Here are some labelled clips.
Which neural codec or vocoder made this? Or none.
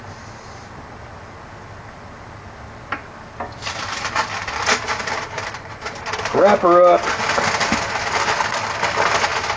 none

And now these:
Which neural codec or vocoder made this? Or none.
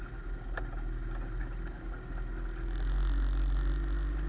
none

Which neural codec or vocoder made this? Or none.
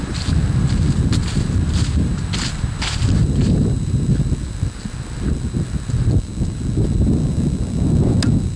none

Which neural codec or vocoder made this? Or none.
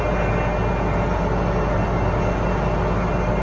none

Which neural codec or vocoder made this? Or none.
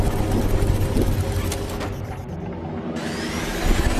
none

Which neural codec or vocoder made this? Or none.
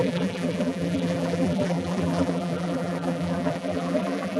vocoder, BigVGAN v2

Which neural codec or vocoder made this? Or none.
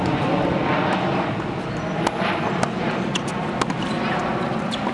none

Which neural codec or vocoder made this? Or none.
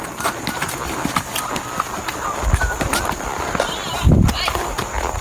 none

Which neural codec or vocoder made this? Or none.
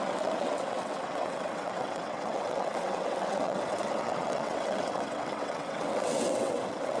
vocoder, WaveNeXt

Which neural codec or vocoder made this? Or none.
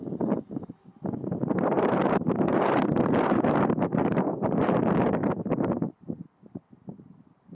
vocoder, BigVGAN v2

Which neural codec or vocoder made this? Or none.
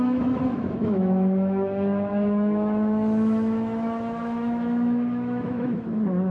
autoencoder, DAC-VAE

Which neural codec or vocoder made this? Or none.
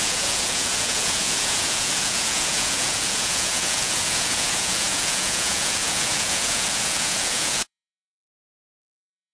vocoder, Vocos